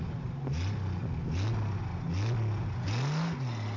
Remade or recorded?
recorded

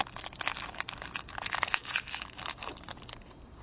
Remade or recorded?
recorded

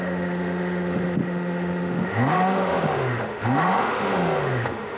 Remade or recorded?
remade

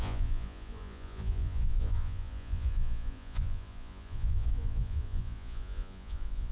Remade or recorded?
remade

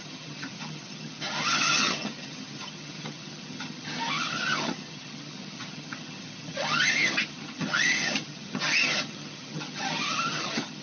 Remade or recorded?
remade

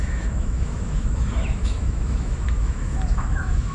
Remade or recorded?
remade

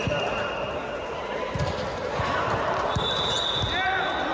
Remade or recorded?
recorded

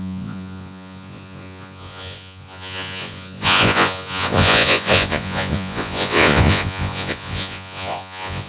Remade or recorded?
remade